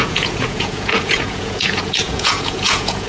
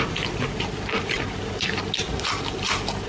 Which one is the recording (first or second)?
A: second